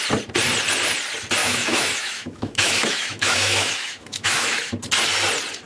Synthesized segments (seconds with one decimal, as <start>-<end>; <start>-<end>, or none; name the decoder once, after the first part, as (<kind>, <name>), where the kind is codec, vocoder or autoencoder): 1.4-4.7 (autoencoder, DAC-VAE)